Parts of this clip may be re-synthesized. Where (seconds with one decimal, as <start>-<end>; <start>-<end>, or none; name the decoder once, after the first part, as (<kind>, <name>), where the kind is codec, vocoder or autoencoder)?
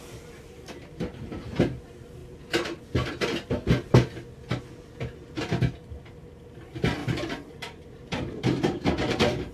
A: 2.2-2.8 (vocoder, BigVGAN v2); 7.0-9.5